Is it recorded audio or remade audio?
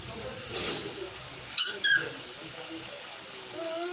remade